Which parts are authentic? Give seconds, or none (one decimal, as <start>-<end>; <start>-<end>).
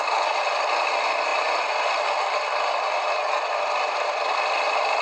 0.0-5.0